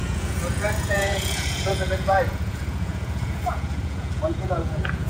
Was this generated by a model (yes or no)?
yes